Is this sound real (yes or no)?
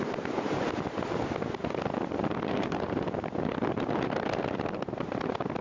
yes